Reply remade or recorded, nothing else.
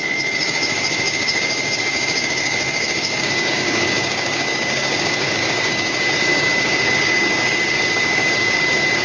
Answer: remade